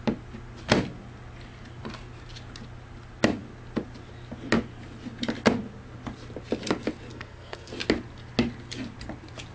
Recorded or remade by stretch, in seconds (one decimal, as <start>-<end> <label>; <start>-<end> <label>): 0.0-7.1 recorded; 7.1-7.7 remade; 7.7-9.5 recorded